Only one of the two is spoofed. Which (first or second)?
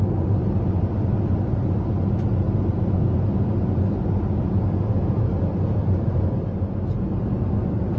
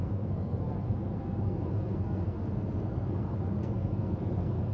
second